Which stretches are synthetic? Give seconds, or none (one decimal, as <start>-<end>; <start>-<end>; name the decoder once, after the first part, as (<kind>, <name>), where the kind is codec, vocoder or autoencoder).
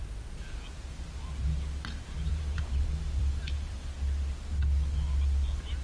2.3-3.9 (vocoder, BigVGAN v2)